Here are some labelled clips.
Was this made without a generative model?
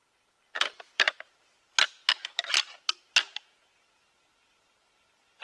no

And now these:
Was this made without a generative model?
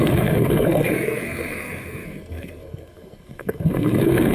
no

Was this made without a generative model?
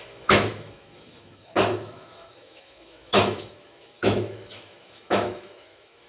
no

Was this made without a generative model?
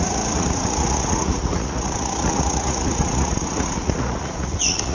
no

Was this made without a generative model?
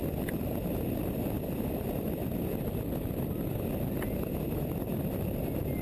yes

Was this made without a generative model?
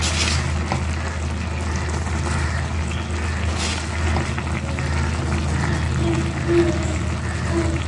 yes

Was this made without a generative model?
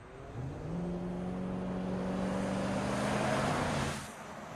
yes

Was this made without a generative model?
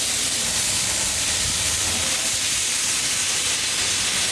yes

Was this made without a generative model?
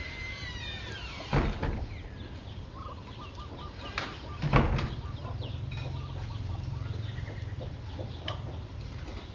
yes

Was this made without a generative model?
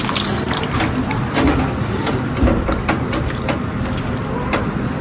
yes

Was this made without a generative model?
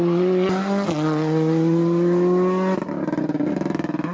yes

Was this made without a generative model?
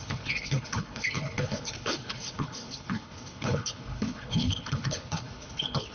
no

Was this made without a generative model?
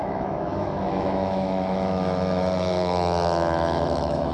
no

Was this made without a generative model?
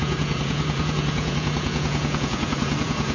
no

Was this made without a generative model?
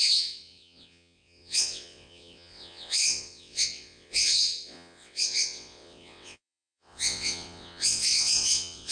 no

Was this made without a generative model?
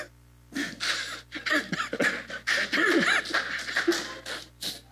yes